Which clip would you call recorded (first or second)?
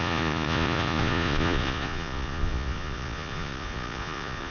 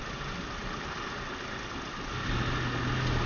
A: second